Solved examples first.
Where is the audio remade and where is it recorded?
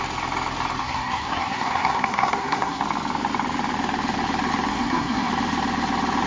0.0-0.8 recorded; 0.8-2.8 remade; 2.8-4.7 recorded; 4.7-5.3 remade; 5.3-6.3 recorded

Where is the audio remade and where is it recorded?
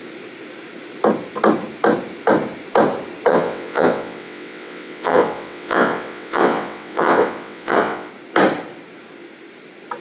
0.0-3.3 recorded; 3.3-8.1 remade; 8.1-10.0 recorded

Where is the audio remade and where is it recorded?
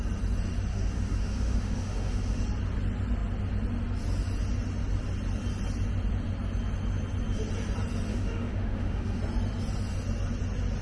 0.0-0.7 recorded; 0.7-2.4 remade; 2.4-8.1 recorded; 8.1-9.2 remade; 9.2-10.8 recorded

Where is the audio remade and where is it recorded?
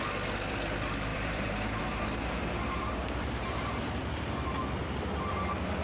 0.0-1.1 recorded; 1.1-1.8 remade; 1.8-3.0 recorded; 3.0-4.6 remade; 4.6-5.8 recorded